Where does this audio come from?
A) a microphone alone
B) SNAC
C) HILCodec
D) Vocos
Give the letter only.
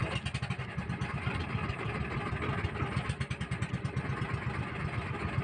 A